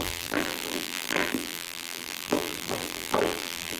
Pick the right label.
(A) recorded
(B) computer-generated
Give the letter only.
B